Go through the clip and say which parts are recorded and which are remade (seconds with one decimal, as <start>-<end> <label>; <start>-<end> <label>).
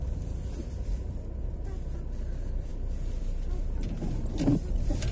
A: 0.0-5.1 recorded